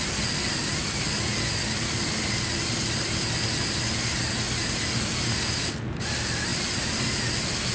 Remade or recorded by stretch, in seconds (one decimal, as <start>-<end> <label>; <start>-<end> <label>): 0.0-7.7 recorded